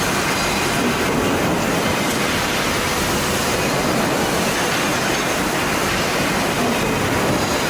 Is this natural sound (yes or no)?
yes